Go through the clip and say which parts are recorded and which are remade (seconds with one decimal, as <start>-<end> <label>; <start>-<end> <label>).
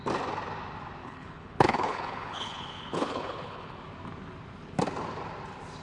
0.0-1.0 recorded; 1.0-3.8 remade; 3.8-5.8 recorded